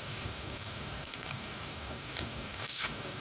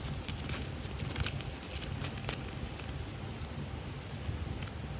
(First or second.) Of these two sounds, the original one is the second